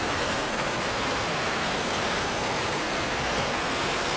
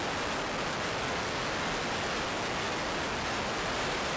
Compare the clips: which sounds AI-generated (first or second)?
first